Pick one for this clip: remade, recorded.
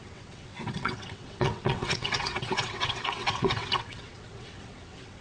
remade